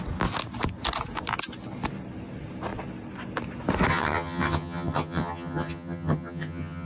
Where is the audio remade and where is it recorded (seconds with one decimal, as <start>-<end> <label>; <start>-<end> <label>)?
0.0-3.9 recorded; 3.9-6.9 remade